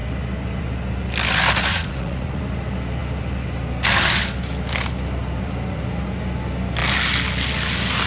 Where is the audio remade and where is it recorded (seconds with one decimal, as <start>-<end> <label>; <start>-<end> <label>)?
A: 0.0-1.7 recorded; 1.7-2.4 remade; 2.4-8.1 recorded